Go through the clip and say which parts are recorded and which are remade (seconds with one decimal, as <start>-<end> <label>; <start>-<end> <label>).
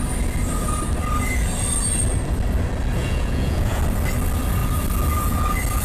0.0-3.0 recorded; 3.0-3.8 remade; 3.8-5.8 recorded